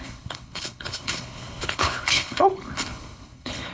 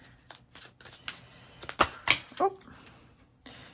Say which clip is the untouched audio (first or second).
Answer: second